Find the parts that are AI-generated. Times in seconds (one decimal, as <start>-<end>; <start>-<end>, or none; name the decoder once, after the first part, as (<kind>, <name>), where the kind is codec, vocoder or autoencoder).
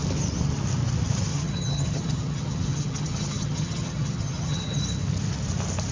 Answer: 1.3-4.8 (vocoder, HiFi-GAN)